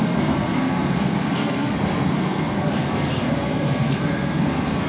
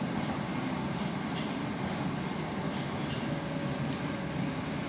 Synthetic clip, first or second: first